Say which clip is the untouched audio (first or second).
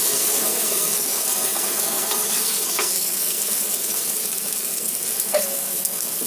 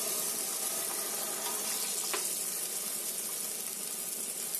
second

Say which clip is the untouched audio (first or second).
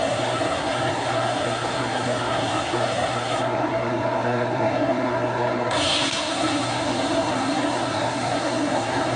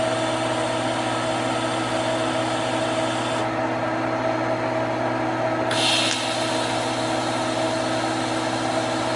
second